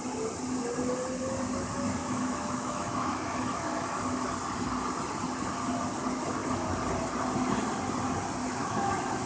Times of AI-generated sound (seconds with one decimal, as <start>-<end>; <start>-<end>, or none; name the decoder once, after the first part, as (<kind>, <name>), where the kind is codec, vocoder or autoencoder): 2.0-4.0 (autoencoder, DAC-VAE); 8.4-9.3